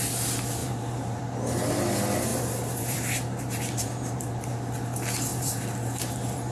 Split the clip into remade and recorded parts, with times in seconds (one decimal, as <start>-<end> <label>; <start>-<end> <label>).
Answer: 0.0-0.6 recorded; 0.6-1.2 remade; 1.2-2.3 recorded; 2.3-4.5 remade; 4.5-5.3 recorded; 5.3-6.5 remade